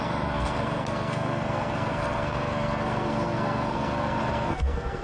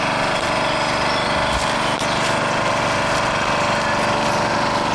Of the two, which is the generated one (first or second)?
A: first